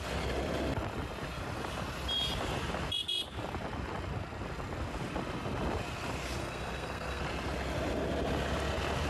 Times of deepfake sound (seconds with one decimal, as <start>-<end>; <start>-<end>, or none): 6.4-7.2